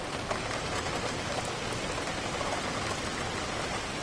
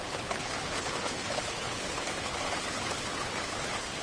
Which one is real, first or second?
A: first